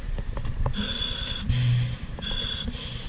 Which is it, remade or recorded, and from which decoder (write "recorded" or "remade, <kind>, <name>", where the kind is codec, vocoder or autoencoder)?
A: recorded